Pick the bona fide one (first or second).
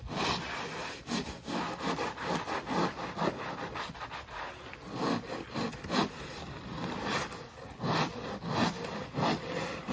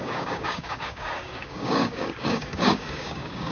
first